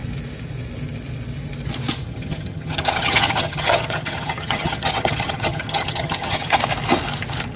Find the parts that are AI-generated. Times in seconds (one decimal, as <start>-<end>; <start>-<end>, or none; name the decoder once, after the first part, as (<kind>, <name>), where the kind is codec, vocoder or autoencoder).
2.0-6.6 (vocoder, HiFi-GAN)